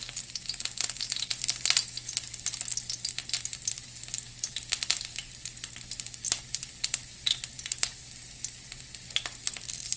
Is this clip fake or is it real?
real